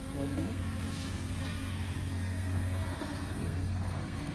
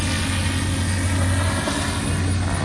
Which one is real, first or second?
second